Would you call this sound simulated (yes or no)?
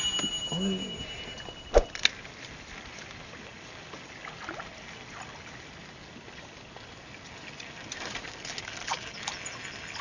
no